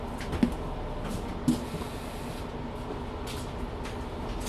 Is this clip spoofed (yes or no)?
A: no